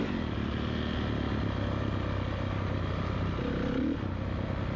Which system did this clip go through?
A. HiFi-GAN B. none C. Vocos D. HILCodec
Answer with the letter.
B